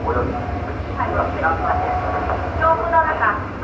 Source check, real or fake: real